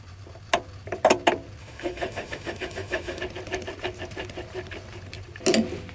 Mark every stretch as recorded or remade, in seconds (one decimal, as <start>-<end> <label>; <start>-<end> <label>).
0.0-1.6 recorded; 1.6-3.2 remade; 3.2-5.9 recorded